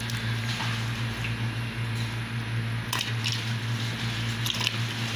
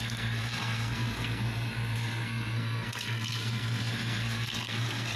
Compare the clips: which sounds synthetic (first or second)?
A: second